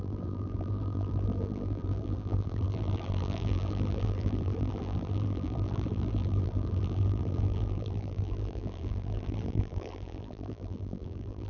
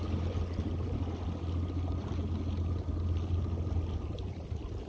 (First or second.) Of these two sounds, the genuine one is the second